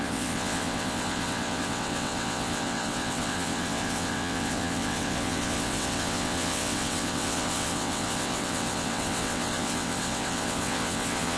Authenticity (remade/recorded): remade